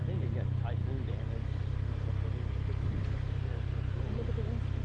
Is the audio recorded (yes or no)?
yes